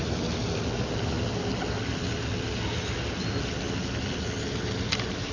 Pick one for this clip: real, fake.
real